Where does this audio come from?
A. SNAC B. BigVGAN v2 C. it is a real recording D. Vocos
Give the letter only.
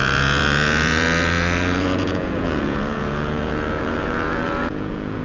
D